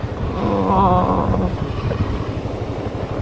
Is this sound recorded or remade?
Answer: recorded